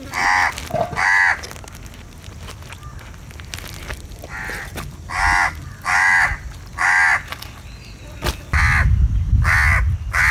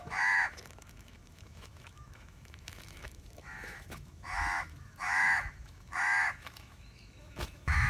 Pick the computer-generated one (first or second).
second